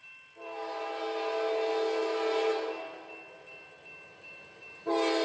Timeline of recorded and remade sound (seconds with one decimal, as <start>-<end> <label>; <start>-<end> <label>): 0.0-5.2 recorded